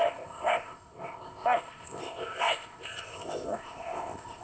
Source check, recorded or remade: remade